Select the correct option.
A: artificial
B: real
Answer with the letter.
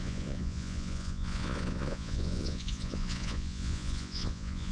A